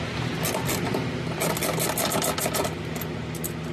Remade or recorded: recorded